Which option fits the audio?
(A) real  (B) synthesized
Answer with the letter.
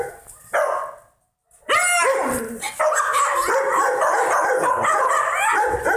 A